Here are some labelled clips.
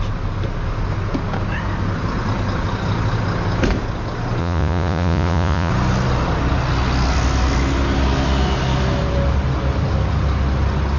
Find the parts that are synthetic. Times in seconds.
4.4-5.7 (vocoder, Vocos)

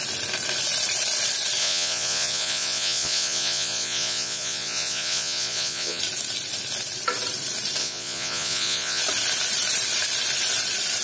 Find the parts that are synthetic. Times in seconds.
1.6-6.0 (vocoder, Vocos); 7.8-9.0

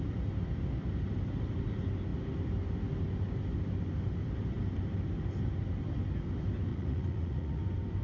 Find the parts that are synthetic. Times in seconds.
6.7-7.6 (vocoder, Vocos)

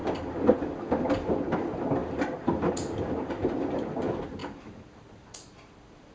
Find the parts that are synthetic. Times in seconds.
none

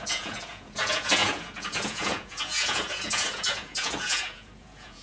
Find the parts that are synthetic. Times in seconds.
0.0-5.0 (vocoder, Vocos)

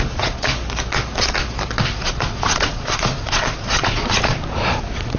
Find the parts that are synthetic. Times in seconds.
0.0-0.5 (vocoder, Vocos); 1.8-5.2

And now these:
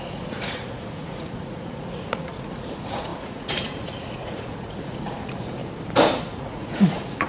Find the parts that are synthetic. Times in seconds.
0.0-5.6 (vocoder, Vocos); 6.2-7.3

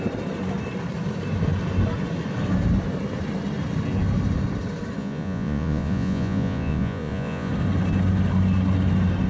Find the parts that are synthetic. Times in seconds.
5.0-7.5 (vocoder, Vocos)